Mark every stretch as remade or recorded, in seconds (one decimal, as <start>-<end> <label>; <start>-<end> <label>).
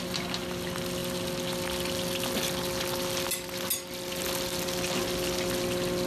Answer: 0.0-6.1 recorded